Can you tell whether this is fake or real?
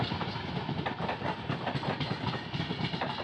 real